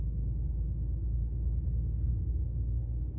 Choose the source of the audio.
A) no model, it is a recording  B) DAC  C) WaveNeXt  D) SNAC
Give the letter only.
B